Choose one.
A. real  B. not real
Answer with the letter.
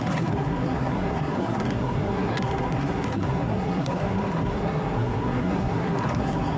B